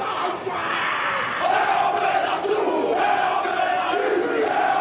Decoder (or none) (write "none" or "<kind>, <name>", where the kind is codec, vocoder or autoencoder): none